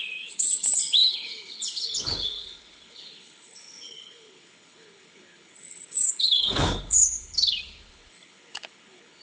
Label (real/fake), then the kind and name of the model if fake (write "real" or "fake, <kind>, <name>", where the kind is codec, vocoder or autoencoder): fake, codec, HILCodec